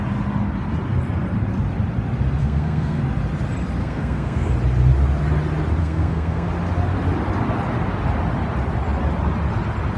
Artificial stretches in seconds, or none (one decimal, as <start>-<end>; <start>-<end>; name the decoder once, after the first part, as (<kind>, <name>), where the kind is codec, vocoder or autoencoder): 2.4-3.0 (codec, SNAC); 3.8-4.5; 5.8-6.5